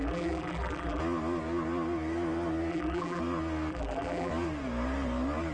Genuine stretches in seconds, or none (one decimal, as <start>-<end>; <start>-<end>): 1.0-2.7; 3.2-3.7; 4.3-5.5